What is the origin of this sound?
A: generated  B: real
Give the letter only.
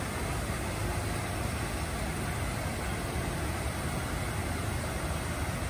B